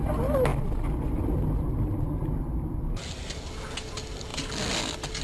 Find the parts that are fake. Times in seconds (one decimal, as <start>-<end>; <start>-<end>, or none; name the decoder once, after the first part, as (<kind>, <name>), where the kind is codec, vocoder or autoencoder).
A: none